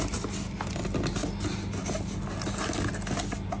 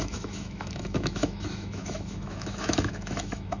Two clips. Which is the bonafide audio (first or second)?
first